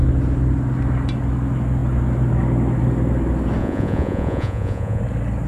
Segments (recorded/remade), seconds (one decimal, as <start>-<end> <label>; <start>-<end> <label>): 0.0-3.6 recorded; 3.6-5.0 remade; 5.0-5.5 recorded